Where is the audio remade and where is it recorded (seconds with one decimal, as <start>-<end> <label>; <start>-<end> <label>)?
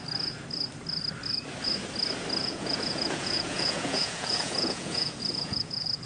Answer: 0.0-2.4 recorded; 2.4-6.1 remade